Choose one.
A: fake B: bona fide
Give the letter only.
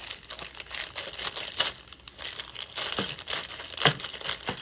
B